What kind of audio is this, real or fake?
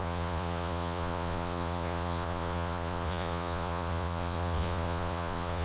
fake